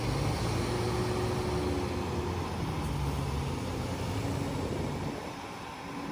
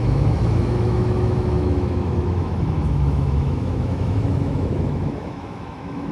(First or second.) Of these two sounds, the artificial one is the second